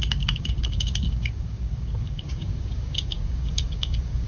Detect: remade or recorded remade